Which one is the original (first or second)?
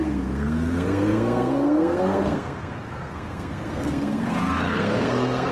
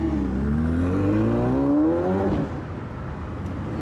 second